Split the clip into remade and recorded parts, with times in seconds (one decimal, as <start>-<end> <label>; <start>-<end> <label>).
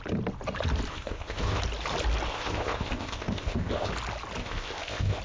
0.0-0.9 recorded; 0.9-1.6 remade; 1.6-2.3 recorded; 2.3-3.9 remade; 3.9-4.4 recorded; 4.4-5.2 remade